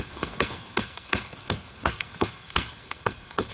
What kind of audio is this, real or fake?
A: fake